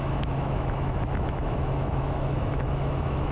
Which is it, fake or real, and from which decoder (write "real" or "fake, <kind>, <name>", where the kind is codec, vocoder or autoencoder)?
fake, autoencoder, DAC-VAE